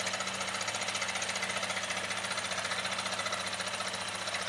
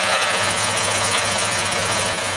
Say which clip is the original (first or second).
first